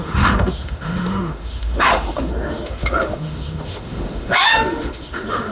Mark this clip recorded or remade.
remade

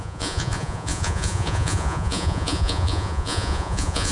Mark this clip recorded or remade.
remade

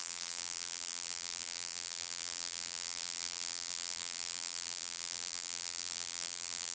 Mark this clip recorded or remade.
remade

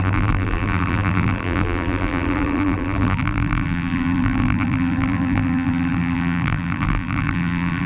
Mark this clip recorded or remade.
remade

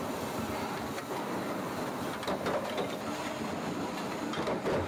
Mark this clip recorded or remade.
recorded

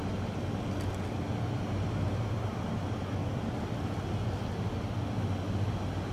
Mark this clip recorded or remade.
recorded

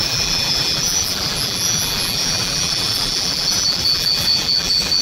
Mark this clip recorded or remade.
remade